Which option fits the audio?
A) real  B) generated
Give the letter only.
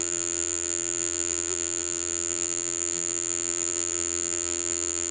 B